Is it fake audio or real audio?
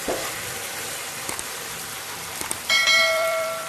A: fake